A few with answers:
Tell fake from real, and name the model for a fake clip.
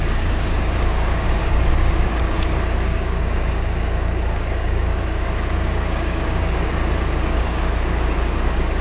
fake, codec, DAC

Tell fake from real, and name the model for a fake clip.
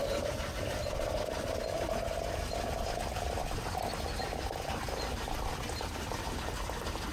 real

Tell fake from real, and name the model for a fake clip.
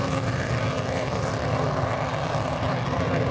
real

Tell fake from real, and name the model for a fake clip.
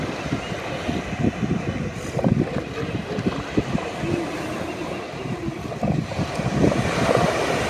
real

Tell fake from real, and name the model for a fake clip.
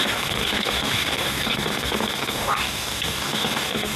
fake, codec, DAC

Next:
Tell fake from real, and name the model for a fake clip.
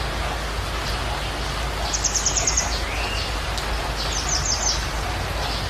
real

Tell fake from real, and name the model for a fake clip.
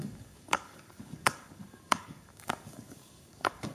fake, codec, DAC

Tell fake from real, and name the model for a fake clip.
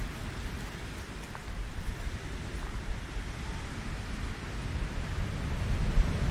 real